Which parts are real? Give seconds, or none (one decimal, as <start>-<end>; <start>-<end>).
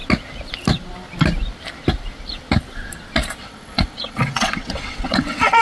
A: 0.0-3.4